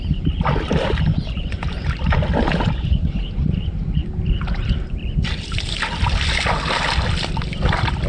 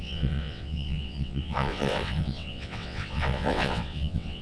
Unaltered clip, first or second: first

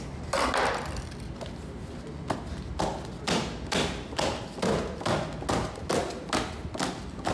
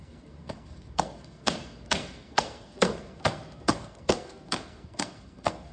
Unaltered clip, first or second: first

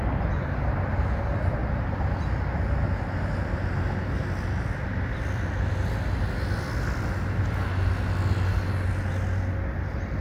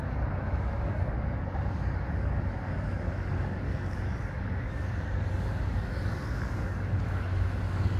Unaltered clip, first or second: first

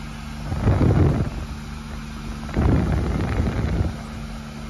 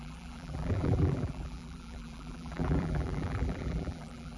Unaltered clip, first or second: first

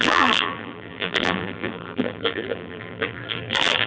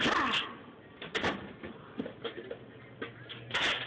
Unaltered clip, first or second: second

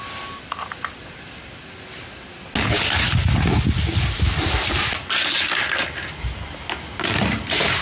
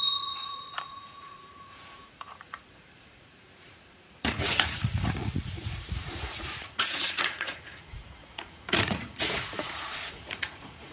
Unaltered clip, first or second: first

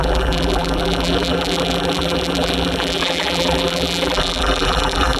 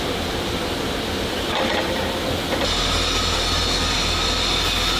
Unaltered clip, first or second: second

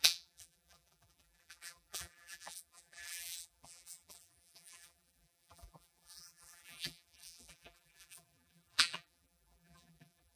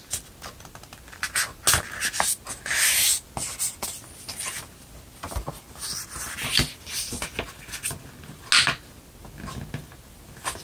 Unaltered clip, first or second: second